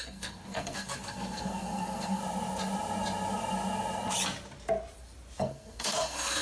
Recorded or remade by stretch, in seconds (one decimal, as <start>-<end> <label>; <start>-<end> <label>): 0.0-2.2 remade; 2.2-5.4 recorded; 5.4-6.4 remade